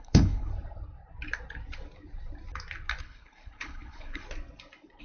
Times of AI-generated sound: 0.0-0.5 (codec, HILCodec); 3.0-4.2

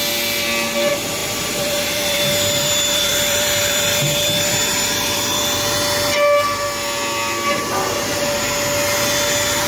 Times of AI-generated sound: 1.2-5.4 (vocoder, BigVGAN v2)

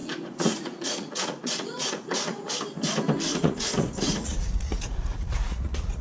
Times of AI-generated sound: 0.0-2.5 (vocoder, Vocos); 3.3-6.0

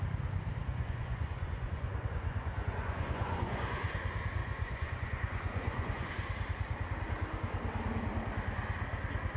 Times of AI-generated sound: 0.7-3.9 (vocoder, Vocos); 4.4-6.1